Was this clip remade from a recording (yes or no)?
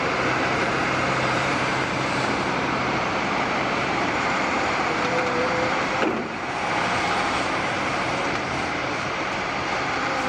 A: yes